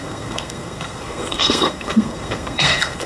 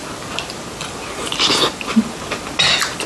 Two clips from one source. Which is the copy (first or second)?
first